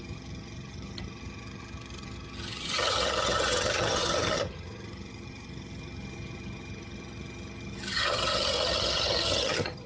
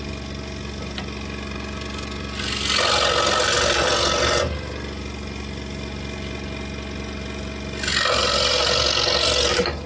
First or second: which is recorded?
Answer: second